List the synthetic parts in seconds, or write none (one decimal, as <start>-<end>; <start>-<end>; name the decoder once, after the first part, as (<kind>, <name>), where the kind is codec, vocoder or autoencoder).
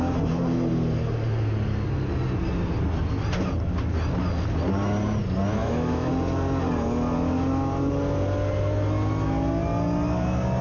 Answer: 5.6-6.1 (autoencoder, DAC-VAE)